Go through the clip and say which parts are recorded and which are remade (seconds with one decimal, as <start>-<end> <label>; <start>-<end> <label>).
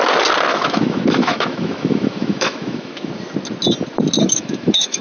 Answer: 0.0-0.5 recorded; 0.5-3.1 remade; 3.1-4.2 recorded; 4.2-5.0 remade